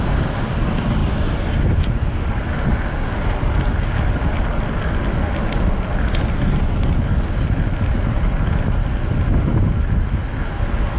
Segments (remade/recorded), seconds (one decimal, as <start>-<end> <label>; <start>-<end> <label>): 0.0-11.0 recorded